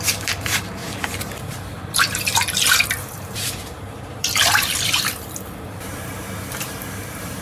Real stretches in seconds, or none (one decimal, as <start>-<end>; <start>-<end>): none